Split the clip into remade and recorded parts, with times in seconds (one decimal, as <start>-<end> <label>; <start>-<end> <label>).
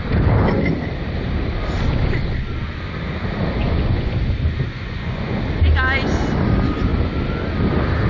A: 0.0-3.6 recorded; 3.6-4.1 remade; 4.1-4.7 recorded; 4.7-5.4 remade; 5.4-8.1 recorded